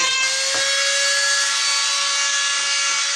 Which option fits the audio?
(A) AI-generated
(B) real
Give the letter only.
B